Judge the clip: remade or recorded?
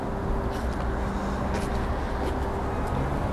recorded